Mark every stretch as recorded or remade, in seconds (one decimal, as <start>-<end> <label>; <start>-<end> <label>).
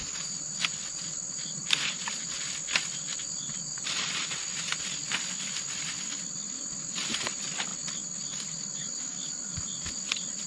0.0-10.5 recorded